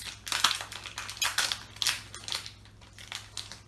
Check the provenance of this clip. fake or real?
real